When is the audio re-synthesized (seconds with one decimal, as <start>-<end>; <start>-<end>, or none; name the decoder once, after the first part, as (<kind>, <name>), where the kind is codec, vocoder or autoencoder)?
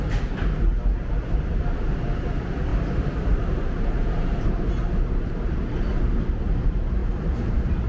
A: 2.7-4.6 (vocoder, BigVGAN v2); 7.0-7.9